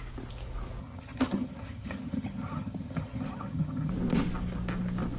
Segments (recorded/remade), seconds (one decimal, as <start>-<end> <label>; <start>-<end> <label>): 0.0-0.8 recorded; 0.8-3.9 remade; 3.9-5.2 recorded